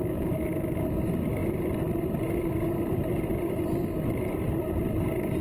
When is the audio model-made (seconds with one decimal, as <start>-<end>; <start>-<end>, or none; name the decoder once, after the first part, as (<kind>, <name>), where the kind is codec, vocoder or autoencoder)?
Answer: none